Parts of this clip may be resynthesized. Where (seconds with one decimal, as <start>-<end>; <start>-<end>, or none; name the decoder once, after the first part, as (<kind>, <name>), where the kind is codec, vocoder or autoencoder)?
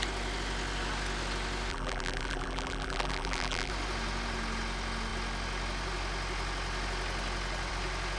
1.7-3.7 (vocoder, BigVGAN v2)